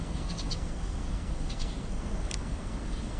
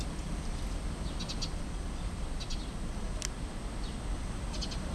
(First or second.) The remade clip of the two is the first